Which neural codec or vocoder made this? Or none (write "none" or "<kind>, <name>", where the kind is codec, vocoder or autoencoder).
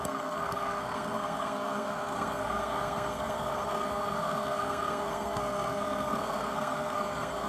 codec, SNAC